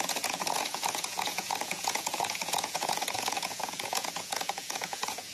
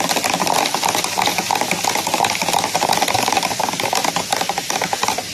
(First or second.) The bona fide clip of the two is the second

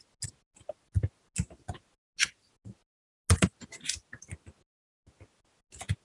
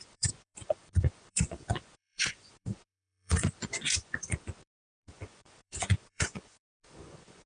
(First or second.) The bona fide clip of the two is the first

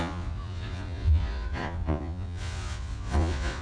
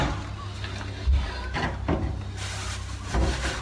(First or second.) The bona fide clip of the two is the second